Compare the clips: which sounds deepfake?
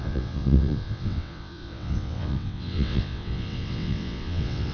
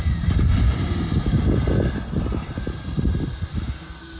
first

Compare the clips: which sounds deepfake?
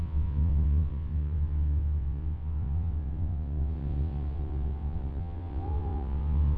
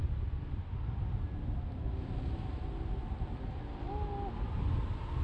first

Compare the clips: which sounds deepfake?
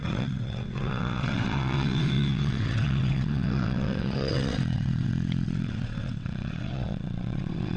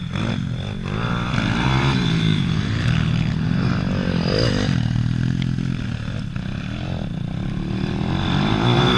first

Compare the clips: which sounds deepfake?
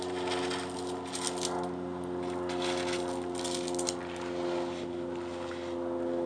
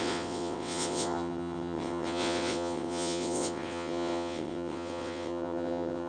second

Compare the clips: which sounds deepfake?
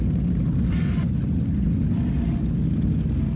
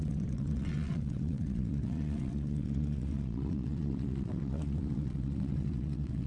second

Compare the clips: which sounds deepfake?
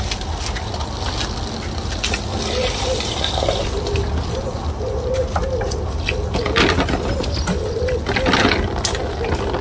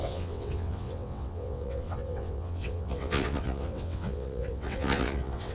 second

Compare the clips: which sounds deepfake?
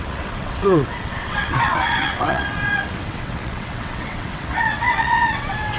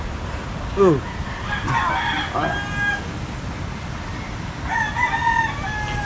first